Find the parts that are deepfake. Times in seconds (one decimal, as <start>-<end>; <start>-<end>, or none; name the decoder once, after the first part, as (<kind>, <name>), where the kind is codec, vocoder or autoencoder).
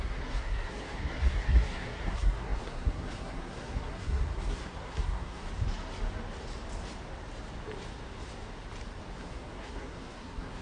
0.0-5.4 (codec, SNAC); 9.2-10.6